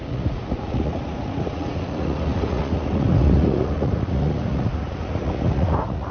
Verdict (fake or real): fake